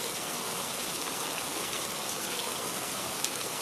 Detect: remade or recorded remade